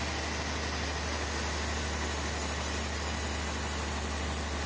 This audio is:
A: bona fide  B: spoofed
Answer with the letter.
A